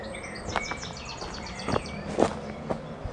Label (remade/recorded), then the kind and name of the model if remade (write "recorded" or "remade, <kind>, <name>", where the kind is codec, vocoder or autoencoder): recorded